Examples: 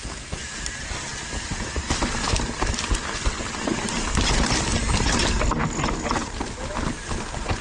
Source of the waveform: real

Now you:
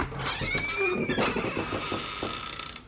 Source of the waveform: real